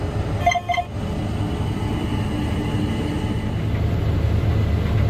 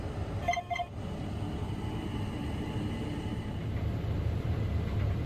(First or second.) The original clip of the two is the first